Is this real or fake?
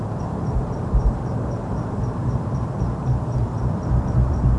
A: fake